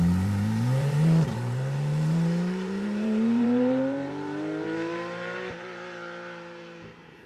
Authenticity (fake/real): fake